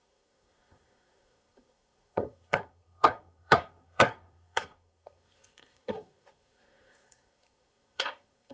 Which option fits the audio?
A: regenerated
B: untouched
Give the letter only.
A